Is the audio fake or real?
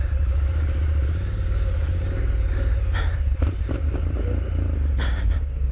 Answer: fake